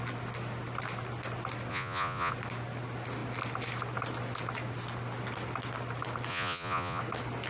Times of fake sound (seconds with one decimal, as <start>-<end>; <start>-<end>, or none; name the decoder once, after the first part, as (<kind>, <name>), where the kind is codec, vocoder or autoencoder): 1.7-2.3 (vocoder, Vocos); 6.3-7.0